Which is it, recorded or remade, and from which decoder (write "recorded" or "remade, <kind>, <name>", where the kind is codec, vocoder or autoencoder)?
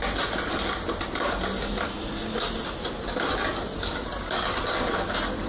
recorded